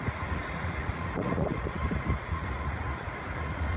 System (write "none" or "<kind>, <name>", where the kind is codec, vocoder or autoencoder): vocoder, Vocos